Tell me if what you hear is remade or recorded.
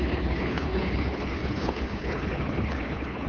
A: remade